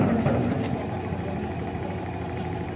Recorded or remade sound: remade